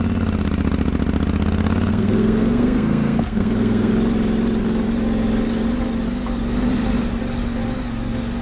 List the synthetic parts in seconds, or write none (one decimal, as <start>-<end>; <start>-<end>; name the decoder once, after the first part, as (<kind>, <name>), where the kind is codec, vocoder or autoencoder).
1.9-3.9 (codec, SNAC)